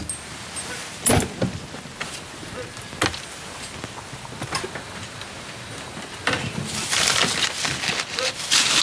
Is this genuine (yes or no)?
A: yes